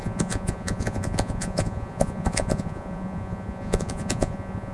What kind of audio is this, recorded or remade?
remade